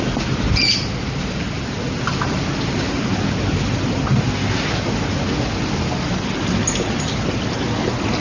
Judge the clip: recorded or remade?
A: recorded